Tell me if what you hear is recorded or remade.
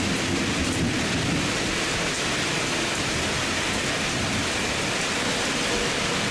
recorded